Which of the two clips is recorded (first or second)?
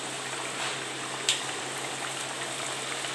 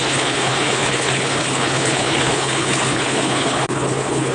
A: first